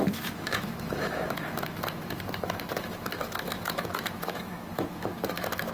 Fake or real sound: fake